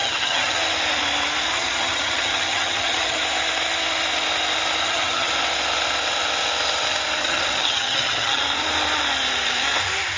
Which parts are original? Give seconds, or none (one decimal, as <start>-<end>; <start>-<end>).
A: 0.6-1.5; 3.2-4.8; 5.3-7.2; 8.4-10.2